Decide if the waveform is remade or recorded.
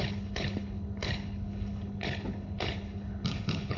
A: remade